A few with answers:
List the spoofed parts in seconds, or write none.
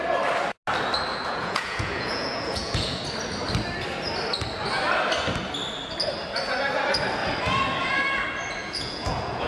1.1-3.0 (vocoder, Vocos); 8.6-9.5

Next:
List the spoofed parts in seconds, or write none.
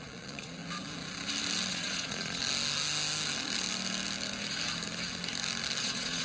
0.0-0.6 (vocoder, Vocos); 1.7-2.4; 5.8-6.2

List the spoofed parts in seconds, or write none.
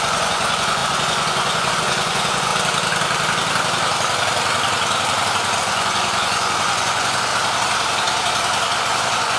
0.0-2.5 (vocoder, Vocos); 5.6-7.3; 8.8-9.4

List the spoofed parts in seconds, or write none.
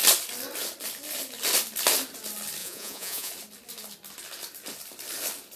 2.6-3.3 (vocoder, Vocos)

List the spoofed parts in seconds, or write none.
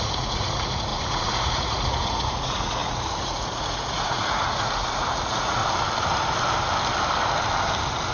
0.0-5.6 (vocoder, Vocos)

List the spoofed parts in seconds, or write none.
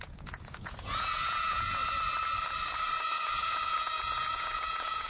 0.0-1.8 (vocoder, Vocos); 3.0-5.1